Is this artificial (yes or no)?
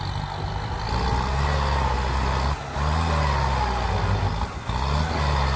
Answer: no